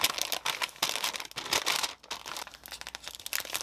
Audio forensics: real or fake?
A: real